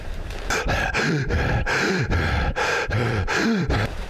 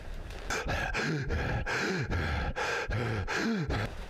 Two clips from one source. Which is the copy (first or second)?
first